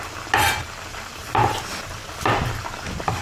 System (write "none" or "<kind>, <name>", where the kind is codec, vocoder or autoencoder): none